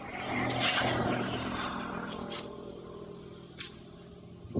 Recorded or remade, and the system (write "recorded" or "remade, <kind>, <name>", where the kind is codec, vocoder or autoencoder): recorded